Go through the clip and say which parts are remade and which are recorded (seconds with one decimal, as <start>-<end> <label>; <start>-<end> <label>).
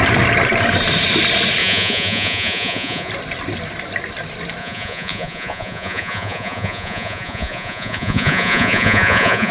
0.0-1.6 recorded; 1.6-3.1 remade; 3.1-4.6 recorded; 4.6-9.5 remade